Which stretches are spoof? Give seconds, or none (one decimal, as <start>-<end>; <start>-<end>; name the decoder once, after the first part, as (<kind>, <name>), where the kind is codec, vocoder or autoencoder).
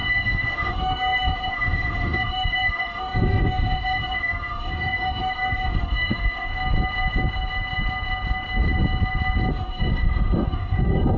0.0-6.5 (autoencoder, DAC-VAE); 9.5-11.2